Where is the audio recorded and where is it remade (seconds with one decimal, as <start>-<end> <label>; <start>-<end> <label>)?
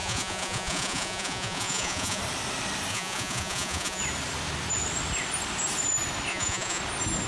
0.0-2.2 remade; 2.2-2.9 recorded; 2.9-4.0 remade; 4.0-6.3 recorded; 6.3-6.8 remade; 6.8-7.3 recorded